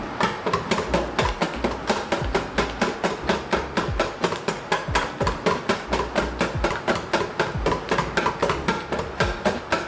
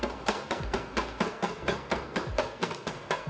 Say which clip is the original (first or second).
first